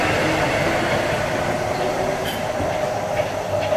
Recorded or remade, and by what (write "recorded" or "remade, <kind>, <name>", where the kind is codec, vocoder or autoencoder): recorded